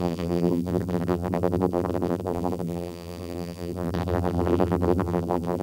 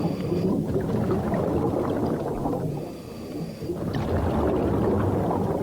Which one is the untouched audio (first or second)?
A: second